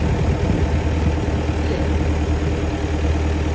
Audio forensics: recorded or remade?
recorded